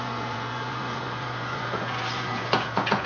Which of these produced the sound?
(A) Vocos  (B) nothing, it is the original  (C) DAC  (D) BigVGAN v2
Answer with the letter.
A